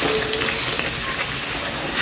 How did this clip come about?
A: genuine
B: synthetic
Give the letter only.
A